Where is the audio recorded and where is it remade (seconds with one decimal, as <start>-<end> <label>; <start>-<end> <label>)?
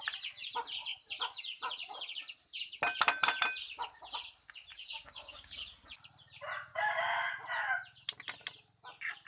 0.0-4.7 recorded; 4.7-5.6 remade; 5.6-6.7 recorded; 6.7-7.3 remade; 7.3-9.3 recorded